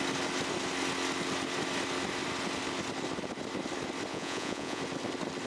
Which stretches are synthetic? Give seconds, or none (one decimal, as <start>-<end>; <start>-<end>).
4.1-4.8